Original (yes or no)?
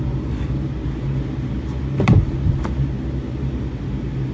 yes